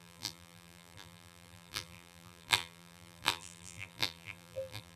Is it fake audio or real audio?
fake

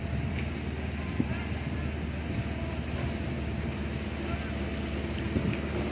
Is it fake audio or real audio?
real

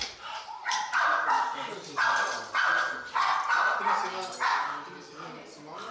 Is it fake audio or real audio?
real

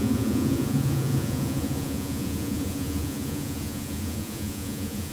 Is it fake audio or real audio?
fake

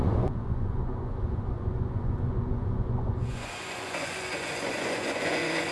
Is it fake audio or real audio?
fake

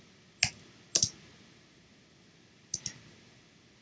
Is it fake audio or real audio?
real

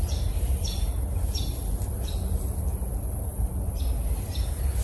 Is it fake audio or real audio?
real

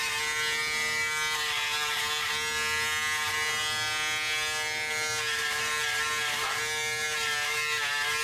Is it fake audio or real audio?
real